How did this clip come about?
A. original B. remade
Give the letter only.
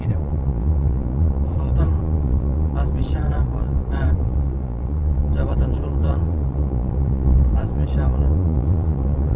B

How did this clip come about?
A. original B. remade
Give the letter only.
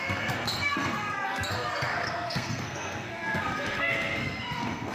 B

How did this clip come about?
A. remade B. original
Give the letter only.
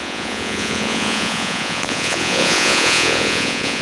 A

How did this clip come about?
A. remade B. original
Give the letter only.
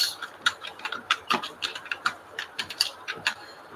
A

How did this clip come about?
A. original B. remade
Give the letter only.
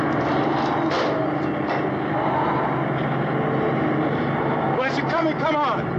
A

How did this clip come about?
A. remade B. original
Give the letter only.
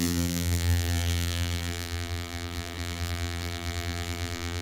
A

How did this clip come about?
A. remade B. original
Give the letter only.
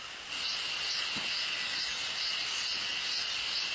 B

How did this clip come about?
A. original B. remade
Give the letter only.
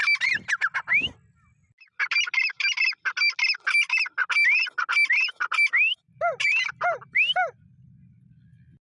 A